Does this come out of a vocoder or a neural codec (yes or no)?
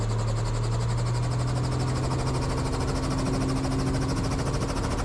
no